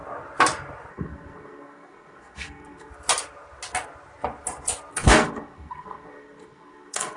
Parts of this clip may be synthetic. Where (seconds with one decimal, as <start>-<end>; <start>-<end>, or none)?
0.9-2.9; 4.9-7.2